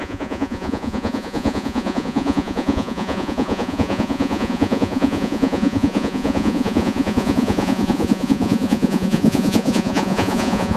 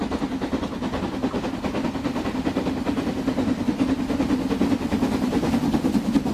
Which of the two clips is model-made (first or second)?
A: first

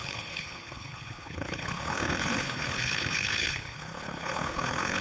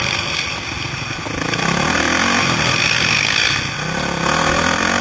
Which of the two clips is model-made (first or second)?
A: first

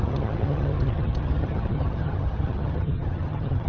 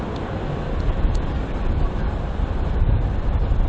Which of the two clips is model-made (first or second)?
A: first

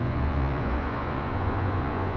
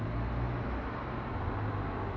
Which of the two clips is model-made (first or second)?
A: first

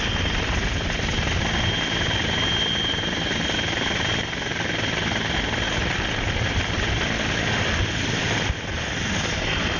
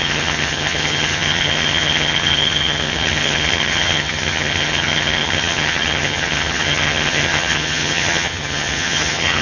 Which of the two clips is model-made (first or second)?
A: second